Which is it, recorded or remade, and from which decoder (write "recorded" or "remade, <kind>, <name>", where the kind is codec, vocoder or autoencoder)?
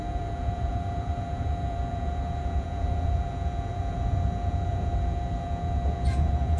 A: remade, vocoder, Vocos